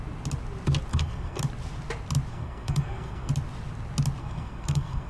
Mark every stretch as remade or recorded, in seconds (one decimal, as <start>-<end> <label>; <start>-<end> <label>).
0.0-0.9 recorded; 0.9-1.4 remade; 1.4-2.3 recorded; 2.3-3.3 remade; 3.3-4.2 recorded; 4.2-5.1 remade